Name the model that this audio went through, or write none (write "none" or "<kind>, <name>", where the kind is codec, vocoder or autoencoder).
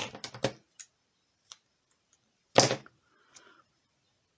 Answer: none